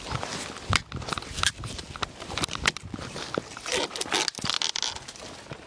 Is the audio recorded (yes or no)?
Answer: yes